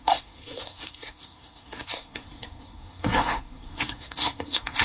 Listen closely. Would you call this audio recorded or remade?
remade